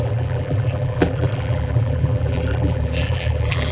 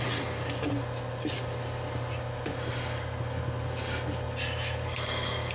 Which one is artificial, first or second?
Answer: first